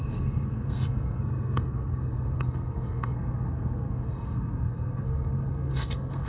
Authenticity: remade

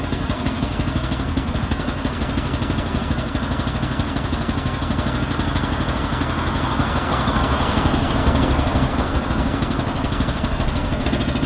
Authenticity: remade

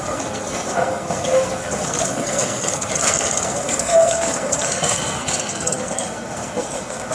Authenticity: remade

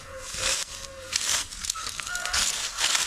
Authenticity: remade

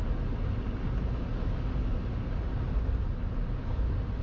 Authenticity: recorded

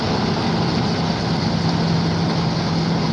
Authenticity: recorded